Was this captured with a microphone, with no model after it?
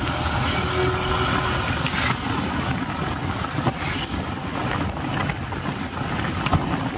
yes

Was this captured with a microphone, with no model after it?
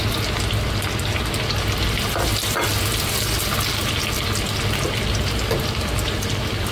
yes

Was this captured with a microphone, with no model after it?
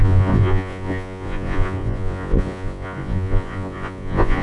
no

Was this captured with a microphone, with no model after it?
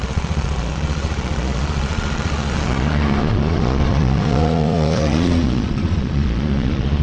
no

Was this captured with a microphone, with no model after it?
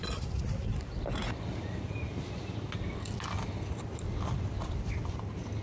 yes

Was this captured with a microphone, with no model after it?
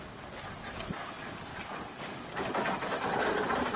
yes